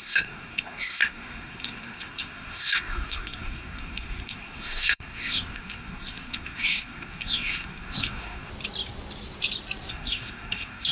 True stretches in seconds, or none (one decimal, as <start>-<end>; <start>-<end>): 8.5-9.9